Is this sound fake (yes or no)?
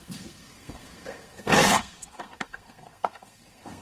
yes